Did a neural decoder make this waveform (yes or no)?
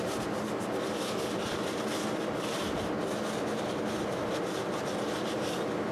no